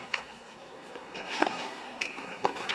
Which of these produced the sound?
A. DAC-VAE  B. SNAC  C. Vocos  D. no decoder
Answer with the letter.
B